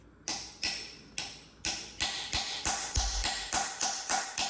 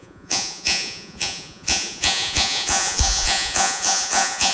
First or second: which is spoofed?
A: second